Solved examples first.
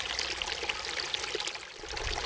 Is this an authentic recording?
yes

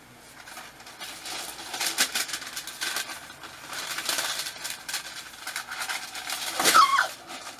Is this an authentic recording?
yes